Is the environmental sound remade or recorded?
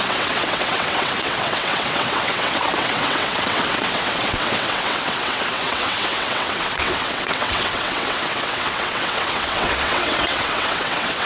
remade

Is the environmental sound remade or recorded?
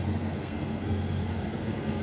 remade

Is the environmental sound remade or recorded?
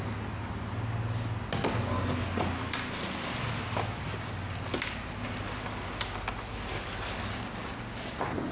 recorded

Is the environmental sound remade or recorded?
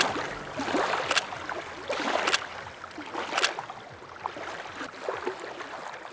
recorded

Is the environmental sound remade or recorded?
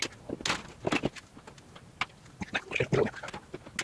recorded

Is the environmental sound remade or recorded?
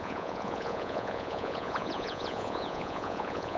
remade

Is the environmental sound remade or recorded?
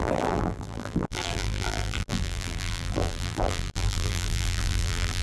remade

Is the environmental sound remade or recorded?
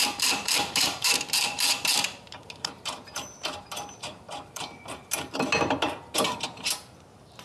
remade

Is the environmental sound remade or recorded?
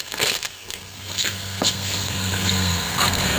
remade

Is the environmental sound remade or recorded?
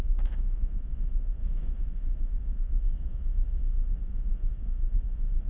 remade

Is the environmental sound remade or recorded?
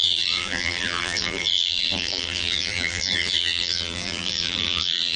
remade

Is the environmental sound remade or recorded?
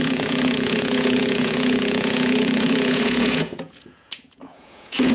remade